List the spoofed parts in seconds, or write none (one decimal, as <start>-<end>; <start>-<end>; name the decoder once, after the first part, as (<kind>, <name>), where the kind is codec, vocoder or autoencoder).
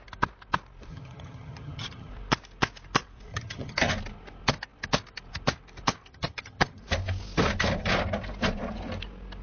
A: 0.9-2.1 (vocoder, HiFi-GAN); 3.3-3.9; 6.1-6.8